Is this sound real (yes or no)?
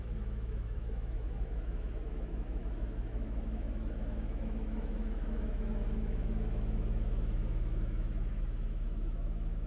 no